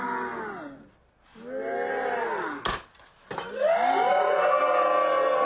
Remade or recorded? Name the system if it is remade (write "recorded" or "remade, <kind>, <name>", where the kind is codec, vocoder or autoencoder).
recorded